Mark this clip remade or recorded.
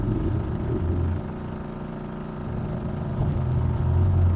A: recorded